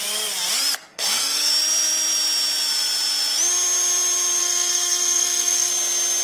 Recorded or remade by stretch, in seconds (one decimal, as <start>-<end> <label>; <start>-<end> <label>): 0.0-0.9 recorded; 0.9-1.5 remade; 1.5-4.4 recorded; 4.4-5.7 remade; 5.7-6.2 recorded